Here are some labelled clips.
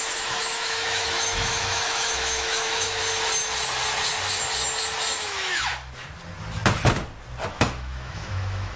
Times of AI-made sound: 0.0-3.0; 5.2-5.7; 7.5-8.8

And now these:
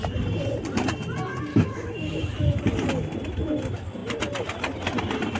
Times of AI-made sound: 1.5-2.6

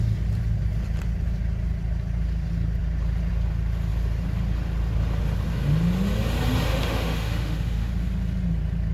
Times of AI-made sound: 6.7-7.9

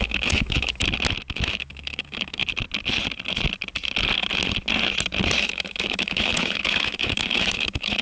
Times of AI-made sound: 0.0-0.8; 1.3-2.4; 5.4-8.0